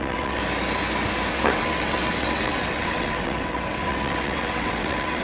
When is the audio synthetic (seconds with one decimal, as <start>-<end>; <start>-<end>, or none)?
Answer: 0.0-0.4; 1.3-5.2